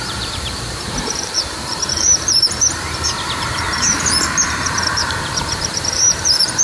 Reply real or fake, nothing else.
fake